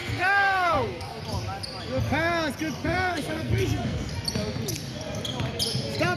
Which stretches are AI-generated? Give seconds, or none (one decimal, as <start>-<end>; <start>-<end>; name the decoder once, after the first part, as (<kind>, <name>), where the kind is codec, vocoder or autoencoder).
0.0-1.2 (codec, SNAC); 2.8-4.1